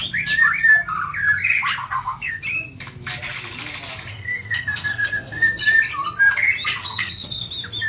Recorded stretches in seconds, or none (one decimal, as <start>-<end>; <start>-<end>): 0.0-1.8; 2.4-4.1; 5.6-6.8; 7.5-7.9